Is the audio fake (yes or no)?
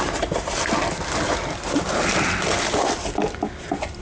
yes